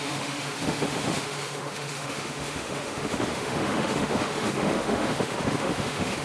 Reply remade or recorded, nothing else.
remade